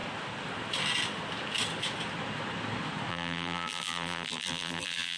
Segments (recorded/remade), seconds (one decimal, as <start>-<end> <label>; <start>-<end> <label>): 0.0-3.1 recorded; 3.1-5.2 remade